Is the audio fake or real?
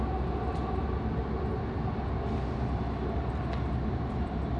real